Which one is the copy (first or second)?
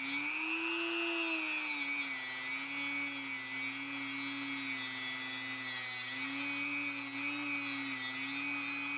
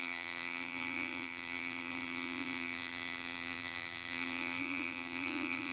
second